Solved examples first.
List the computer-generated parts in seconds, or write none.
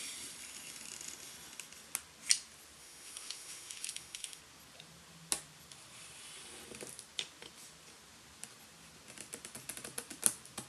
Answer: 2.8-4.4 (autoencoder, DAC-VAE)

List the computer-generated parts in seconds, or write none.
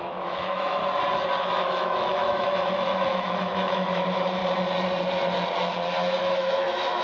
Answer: 0.0-0.8 (autoencoder, DAC-VAE); 1.4-4.4; 6.2-7.0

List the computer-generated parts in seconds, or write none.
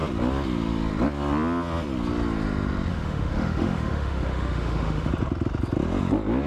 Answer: 2.9-5.1 (autoencoder, DAC-VAE)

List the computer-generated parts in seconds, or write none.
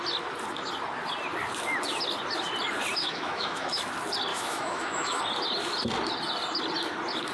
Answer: 3.0-3.8 (autoencoder, DAC-VAE); 4.3-5.2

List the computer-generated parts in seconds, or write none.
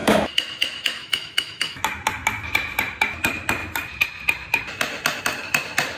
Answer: 0.0-1.8 (autoencoder, DAC-VAE)